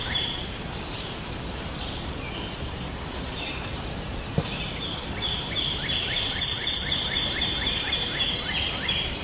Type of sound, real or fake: fake